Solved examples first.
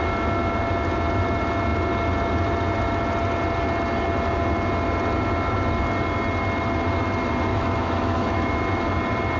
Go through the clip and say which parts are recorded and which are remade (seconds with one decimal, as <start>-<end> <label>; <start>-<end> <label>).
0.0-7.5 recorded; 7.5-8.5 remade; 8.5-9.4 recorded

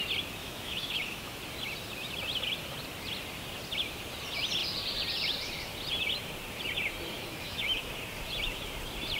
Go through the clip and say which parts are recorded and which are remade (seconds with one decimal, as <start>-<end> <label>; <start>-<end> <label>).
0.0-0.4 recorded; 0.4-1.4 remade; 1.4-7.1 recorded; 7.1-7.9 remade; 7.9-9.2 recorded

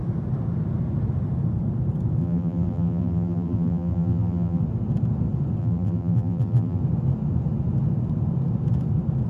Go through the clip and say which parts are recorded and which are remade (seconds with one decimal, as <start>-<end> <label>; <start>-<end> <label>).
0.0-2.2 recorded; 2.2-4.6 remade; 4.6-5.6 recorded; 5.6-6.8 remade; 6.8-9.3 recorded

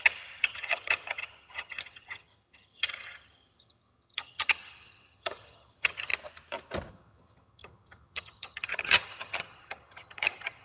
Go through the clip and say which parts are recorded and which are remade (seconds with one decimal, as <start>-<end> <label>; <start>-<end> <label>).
0.0-6.1 remade; 6.1-6.9 recorded; 6.9-10.6 remade

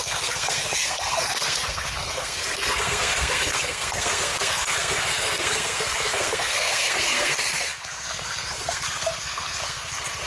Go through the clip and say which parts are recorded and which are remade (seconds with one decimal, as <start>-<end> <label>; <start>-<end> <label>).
0.0-10.3 remade

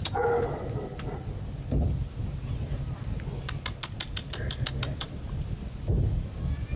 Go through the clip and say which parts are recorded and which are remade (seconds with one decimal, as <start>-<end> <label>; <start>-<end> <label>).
0.0-4.9 recorded; 4.9-5.6 remade; 5.6-6.8 recorded

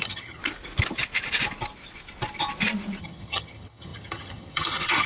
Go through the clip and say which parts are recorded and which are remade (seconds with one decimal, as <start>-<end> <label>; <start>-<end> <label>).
0.0-0.4 remade; 0.4-3.0 recorded; 3.0-5.1 remade

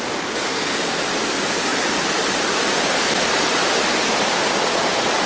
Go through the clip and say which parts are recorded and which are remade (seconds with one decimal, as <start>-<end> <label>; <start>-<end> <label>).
0.0-0.5 recorded; 0.5-1.0 remade; 1.0-5.3 recorded